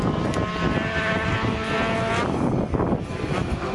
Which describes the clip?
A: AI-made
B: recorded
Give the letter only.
B